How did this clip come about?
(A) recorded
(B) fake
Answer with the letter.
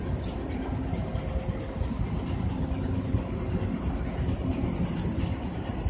A